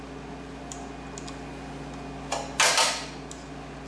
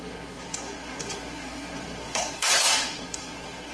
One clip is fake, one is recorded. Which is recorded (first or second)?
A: first